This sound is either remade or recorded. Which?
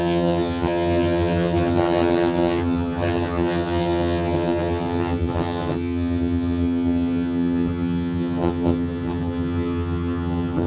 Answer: remade